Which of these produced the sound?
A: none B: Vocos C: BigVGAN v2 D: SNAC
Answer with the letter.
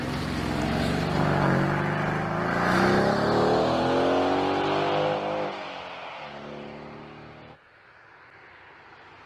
A